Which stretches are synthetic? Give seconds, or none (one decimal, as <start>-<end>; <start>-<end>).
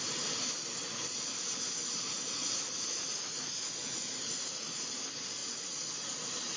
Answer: 2.4-5.0; 5.4-6.0